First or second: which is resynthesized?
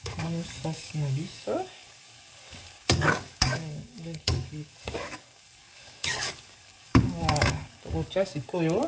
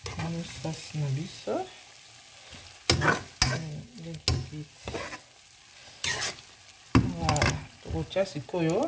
first